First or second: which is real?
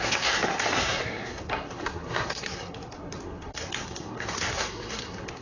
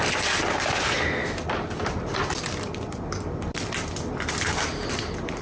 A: second